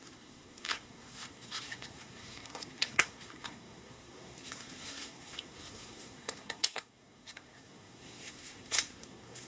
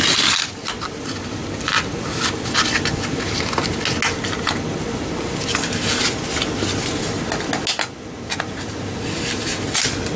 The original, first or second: second